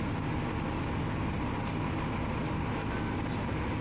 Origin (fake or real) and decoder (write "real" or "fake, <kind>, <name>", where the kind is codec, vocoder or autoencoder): real